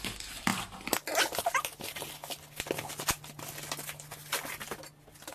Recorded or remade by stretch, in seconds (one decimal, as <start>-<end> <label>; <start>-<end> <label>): 0.0-5.3 recorded